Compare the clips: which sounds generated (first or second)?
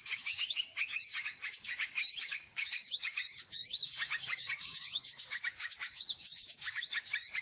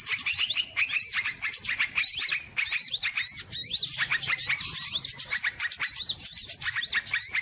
first